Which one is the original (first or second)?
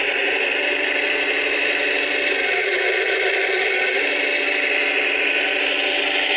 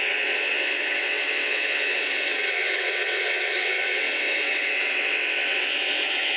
first